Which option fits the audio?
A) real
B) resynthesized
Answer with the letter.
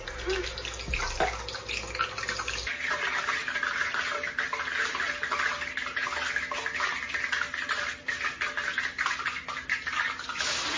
A